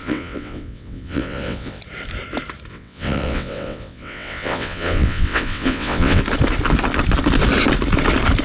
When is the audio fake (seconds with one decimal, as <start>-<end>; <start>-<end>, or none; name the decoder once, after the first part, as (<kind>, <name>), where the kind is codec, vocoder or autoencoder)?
0.0-1.8 (vocoder, WaveNeXt); 2.7-6.2